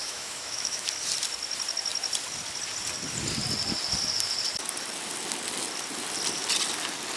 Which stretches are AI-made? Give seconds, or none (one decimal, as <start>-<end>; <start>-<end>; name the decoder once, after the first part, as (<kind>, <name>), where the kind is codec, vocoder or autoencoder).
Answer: 0.0-0.9 (autoencoder, DAC-VAE)